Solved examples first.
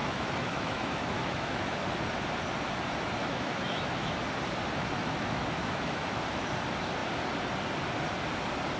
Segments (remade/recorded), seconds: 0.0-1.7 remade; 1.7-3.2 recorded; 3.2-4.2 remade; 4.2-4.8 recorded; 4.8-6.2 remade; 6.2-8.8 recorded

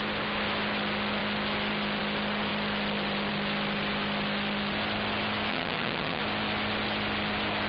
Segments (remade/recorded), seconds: 0.0-5.5 recorded; 5.5-6.2 remade; 6.2-7.7 recorded